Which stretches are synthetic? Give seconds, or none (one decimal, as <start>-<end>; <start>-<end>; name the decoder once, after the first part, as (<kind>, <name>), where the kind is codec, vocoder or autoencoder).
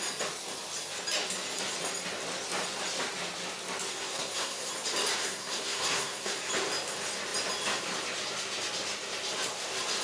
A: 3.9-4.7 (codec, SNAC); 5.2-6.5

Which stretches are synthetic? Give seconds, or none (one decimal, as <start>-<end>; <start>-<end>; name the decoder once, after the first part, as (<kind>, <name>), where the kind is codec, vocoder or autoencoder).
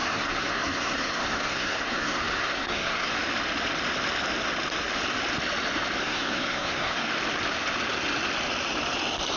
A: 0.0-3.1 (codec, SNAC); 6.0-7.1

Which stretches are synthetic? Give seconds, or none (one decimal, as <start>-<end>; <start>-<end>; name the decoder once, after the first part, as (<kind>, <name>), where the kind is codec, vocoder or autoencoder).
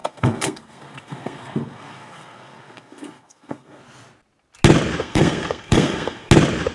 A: 0.0-3.8 (codec, SNAC); 5.0-6.3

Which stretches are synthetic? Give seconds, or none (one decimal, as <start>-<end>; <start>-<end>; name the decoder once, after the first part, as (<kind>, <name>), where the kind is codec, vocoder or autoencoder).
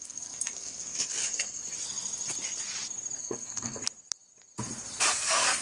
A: 0.0-1.6 (codec, SNAC); 3.2-3.8; 5.1-5.6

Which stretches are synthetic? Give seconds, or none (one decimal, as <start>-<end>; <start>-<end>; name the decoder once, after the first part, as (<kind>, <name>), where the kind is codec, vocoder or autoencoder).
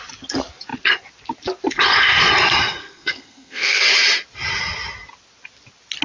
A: 2.8-3.8 (codec, SNAC)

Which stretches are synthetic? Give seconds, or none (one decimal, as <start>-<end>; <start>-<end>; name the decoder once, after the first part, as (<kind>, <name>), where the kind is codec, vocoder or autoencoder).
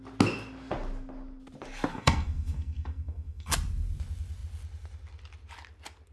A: 1.9-3.5 (codec, SNAC)